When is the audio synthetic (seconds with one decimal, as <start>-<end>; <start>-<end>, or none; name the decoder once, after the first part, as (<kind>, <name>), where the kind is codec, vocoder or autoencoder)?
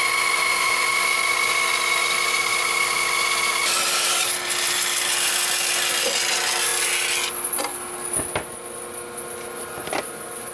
none